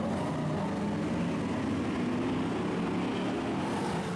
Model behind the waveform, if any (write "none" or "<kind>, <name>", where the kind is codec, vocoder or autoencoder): none